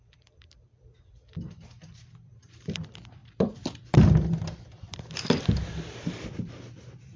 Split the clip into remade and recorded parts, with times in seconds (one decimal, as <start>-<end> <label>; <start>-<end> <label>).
0.0-7.2 remade